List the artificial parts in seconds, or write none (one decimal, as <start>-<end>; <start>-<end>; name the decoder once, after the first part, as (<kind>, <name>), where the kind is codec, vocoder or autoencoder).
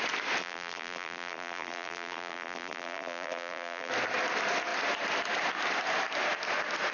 0.4-3.9 (vocoder, BigVGAN v2)